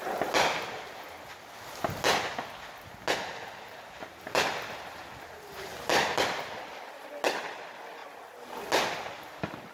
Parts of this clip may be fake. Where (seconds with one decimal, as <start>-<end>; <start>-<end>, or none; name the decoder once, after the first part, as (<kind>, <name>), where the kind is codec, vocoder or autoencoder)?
3.7-7.1 (vocoder, BigVGAN v2)